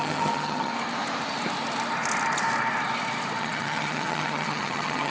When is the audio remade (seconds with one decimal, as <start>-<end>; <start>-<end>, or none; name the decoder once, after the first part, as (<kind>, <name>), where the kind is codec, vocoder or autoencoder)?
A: 0.0-0.7 (vocoder, HiFi-GAN); 3.4-5.1